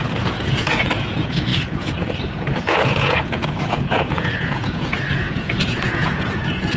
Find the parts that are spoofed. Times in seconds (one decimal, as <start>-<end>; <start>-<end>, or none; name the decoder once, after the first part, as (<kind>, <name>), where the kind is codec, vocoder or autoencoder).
0.0-6.8 (vocoder, Vocos)